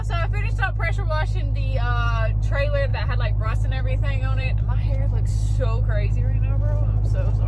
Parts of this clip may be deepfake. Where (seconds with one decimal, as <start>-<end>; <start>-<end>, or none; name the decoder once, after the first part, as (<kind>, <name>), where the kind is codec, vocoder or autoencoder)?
2.9-5.3 (vocoder, BigVGAN v2)

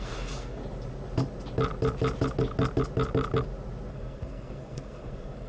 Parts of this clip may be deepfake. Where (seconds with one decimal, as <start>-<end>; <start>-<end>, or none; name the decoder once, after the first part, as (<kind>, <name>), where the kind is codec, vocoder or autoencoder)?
0.0-0.6 (codec, SNAC); 3.9-5.5

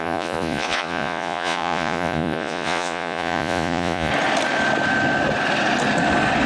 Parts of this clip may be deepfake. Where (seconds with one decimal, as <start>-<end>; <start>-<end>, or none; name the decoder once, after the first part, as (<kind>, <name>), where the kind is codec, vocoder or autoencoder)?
0.0-4.1 (vocoder, Vocos)

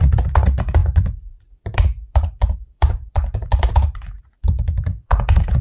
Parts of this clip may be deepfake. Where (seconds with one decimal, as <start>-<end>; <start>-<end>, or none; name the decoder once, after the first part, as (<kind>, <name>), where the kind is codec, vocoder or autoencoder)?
0.0-5.6 (vocoder, Vocos)

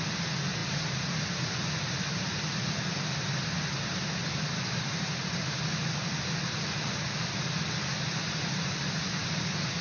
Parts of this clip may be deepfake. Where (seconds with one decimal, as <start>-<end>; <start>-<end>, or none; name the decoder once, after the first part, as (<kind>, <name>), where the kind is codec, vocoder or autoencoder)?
none

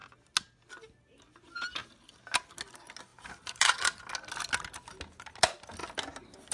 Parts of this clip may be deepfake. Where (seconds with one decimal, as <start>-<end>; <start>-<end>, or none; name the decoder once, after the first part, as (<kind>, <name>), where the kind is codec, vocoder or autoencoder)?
3.1-4.0 (vocoder, BigVGAN v2)